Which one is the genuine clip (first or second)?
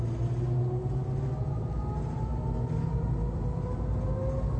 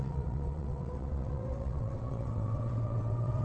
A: first